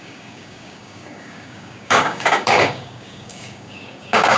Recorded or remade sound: remade